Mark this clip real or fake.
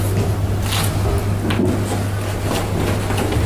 real